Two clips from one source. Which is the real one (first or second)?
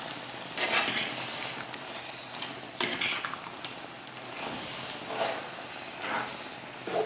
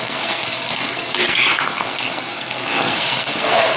first